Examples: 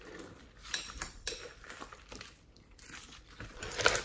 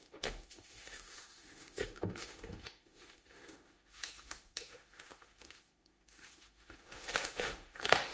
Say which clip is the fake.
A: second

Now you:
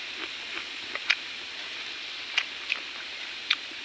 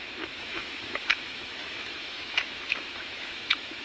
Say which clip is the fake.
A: second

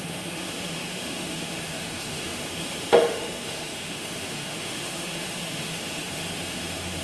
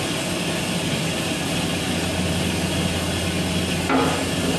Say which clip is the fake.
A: first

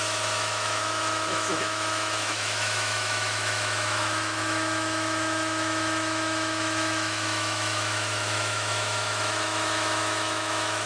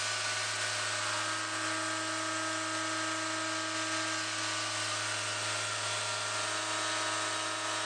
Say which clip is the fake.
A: first